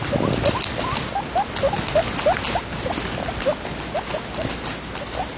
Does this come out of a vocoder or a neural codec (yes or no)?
no